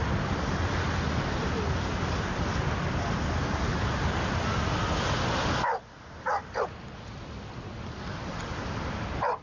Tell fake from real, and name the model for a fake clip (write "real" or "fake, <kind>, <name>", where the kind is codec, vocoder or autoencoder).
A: real